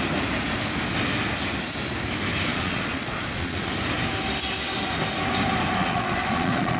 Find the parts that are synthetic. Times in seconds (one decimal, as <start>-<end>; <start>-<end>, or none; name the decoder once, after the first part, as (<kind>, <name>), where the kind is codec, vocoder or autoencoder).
2.5-3.7 (vocoder, Vocos); 5.8-6.8